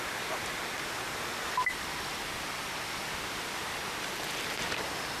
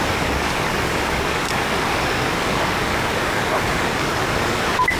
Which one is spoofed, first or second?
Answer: second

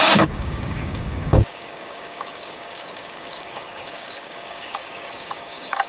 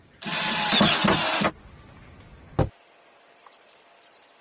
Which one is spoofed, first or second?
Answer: first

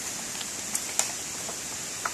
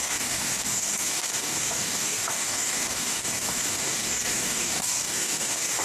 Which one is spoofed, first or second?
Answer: second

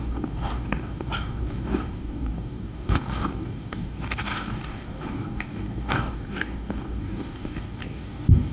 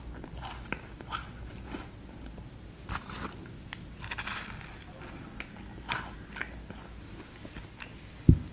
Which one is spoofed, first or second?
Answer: first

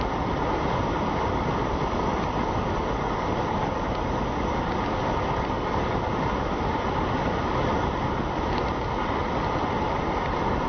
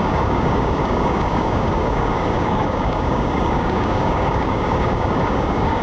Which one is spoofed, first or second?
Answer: second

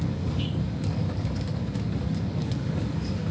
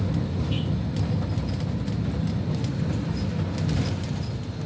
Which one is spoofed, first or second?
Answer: first